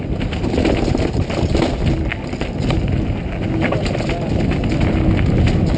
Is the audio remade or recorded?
recorded